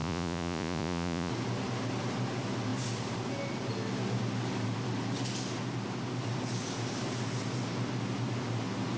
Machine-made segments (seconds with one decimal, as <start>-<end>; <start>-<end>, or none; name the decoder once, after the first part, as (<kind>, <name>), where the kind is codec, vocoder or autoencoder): 0.0-1.3 (vocoder, Vocos)